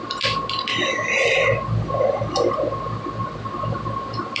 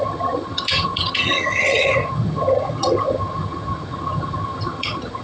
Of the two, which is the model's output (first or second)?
second